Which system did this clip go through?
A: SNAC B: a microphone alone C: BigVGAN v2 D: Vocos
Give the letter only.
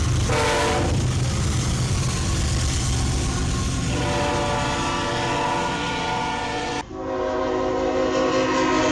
B